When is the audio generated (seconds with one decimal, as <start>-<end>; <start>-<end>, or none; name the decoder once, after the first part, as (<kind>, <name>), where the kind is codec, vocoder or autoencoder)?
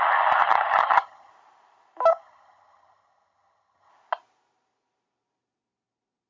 0.4-1.3 (vocoder, HiFi-GAN); 2.1-3.9